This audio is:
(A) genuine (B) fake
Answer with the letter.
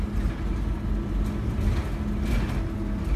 A